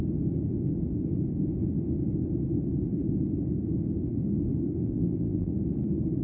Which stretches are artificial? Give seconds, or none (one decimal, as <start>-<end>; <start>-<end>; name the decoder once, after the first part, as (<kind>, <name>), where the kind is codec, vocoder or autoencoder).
4.8-5.5 (vocoder, BigVGAN v2)